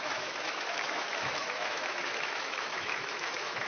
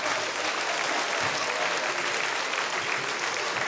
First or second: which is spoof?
first